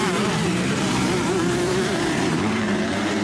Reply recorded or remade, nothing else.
remade